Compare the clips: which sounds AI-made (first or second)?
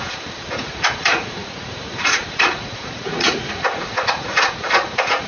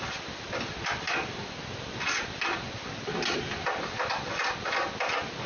first